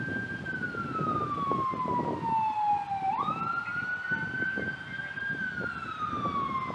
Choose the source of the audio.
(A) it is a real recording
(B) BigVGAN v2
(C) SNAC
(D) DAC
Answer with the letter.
A